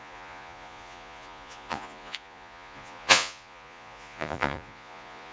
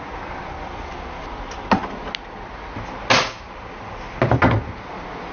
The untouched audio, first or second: second